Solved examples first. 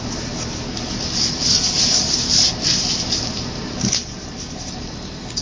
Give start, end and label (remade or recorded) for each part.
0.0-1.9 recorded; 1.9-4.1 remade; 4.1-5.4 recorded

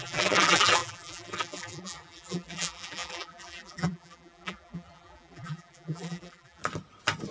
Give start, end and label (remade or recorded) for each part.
0.0-6.6 remade; 6.6-7.3 recorded

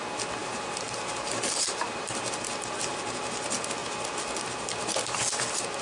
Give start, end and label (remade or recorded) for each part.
0.0-0.4 recorded; 0.4-2.3 remade; 2.3-2.9 recorded; 2.9-3.4 remade; 3.4-5.8 recorded

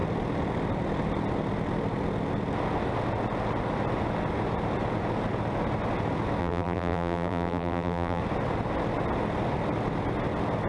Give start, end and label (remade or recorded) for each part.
0.0-6.4 recorded; 6.4-8.2 remade; 8.2-10.7 recorded

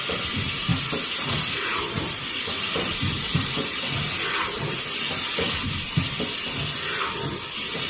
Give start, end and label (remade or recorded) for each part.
0.0-0.7 recorded; 0.7-4.8 remade; 4.8-7.9 recorded

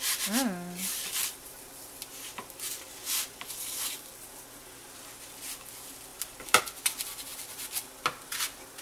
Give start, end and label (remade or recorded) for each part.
0.0-1.0 recorded; 1.0-1.7 remade; 1.7-6.1 recorded; 6.1-6.6 remade; 6.6-8.8 recorded

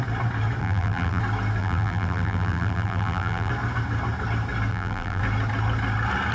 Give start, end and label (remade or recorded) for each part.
0.0-0.6 recorded; 0.6-1.2 remade; 1.2-1.6 recorded; 1.6-3.5 remade; 3.5-4.7 recorded; 4.7-5.2 remade; 5.2-6.3 recorded